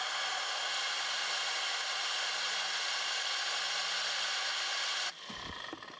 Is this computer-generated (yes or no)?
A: no